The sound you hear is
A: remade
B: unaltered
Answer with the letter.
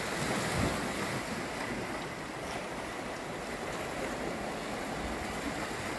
B